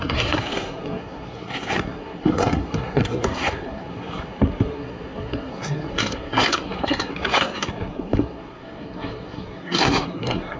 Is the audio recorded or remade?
remade